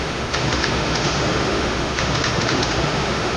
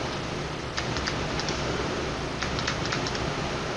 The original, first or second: second